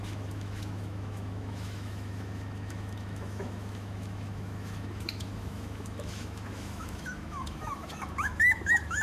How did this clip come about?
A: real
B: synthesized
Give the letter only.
B